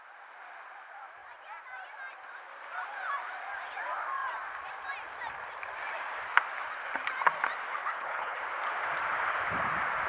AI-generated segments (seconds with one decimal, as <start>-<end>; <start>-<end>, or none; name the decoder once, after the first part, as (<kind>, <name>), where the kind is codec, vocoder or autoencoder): 7.8-8.4 (codec, HILCodec)